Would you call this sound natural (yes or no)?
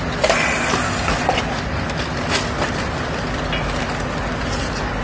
yes